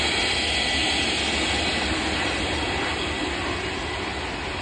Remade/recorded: recorded